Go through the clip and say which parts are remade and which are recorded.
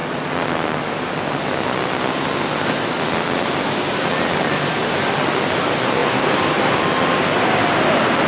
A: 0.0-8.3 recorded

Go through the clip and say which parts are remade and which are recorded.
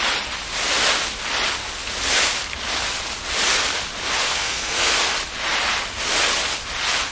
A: 0.0-4.2 recorded; 4.2-4.9 remade; 4.9-7.1 recorded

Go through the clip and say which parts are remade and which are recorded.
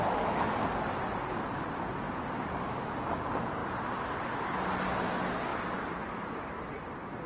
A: 0.0-7.3 recorded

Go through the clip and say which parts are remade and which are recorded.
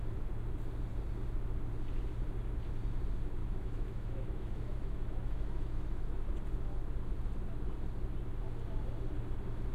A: 0.0-3.4 recorded; 3.4-6.3 remade; 6.3-9.7 recorded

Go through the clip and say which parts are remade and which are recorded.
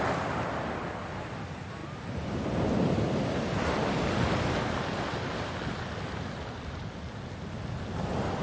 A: 0.0-8.4 recorded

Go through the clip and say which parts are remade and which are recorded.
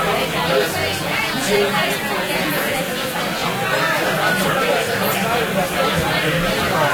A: 0.0-0.8 recorded; 0.8-2.8 remade; 2.8-6.9 recorded